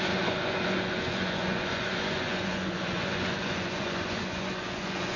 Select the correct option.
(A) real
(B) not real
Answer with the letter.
B